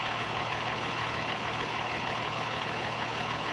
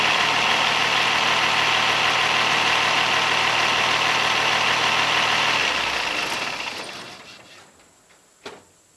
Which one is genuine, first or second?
second